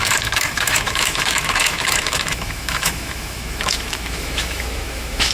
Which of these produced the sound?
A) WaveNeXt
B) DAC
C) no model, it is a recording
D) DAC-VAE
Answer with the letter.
D